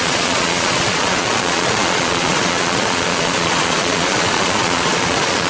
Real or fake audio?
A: fake